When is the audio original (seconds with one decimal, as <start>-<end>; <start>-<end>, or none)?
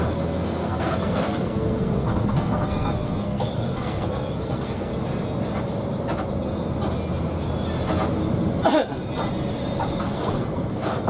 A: 4.9-10.0